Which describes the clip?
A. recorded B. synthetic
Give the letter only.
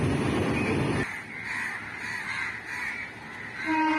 A